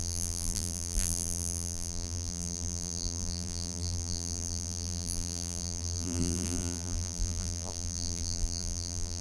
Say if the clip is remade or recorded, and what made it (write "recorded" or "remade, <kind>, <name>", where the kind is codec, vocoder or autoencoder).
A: remade, vocoder, BigVGAN v2